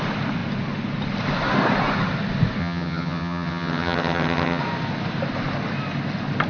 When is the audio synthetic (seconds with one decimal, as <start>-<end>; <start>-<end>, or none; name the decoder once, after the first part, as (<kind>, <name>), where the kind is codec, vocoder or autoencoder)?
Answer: 2.6-4.6 (vocoder, HiFi-GAN)